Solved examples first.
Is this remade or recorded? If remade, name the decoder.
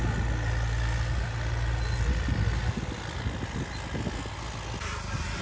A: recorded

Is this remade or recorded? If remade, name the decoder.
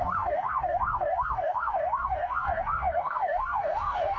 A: remade, codec, DAC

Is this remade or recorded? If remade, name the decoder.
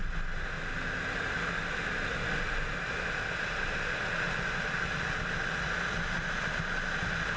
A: recorded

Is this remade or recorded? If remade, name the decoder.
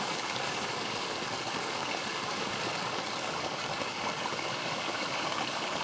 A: remade, codec, DAC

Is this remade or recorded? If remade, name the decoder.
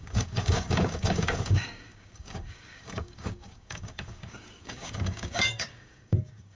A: remade, codec, DAC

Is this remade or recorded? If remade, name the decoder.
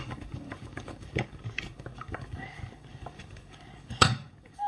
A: remade, codec, DAC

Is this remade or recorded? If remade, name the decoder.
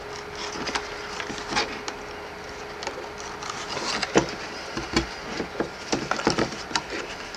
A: recorded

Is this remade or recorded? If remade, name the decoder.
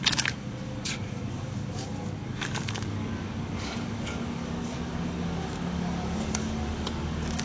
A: remade, codec, DAC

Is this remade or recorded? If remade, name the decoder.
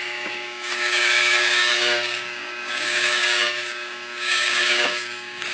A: remade, codec, DAC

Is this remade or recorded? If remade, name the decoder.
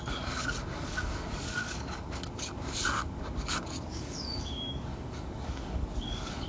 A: remade, codec, DAC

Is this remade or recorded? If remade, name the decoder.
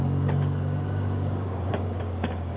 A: remade, codec, DAC